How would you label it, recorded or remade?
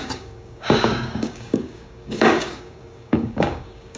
remade